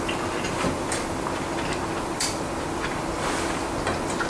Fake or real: real